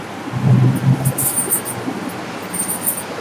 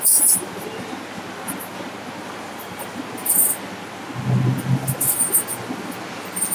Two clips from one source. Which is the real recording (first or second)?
second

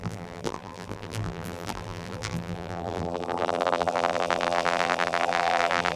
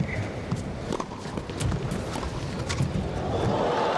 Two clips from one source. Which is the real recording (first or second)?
second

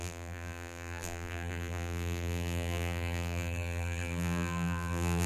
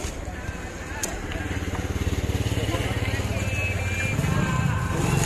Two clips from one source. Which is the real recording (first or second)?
second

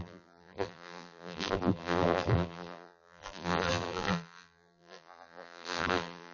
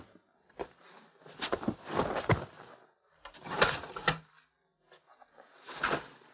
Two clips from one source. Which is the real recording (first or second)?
second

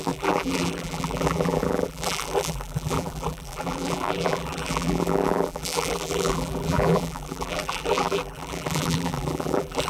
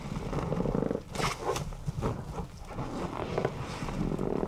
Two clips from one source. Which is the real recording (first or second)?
second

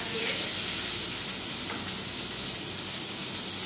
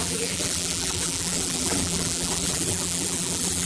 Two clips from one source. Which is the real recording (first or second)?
first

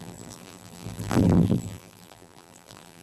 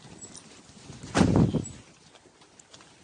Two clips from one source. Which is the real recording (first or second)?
second